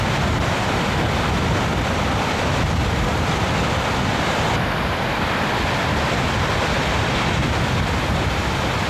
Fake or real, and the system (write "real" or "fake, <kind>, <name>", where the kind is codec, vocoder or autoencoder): real